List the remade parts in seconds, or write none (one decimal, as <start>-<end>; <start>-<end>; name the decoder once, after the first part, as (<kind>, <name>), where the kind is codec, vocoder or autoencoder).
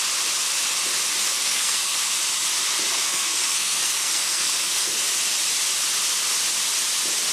1.2-2.2 (codec, SNAC); 2.9-5.0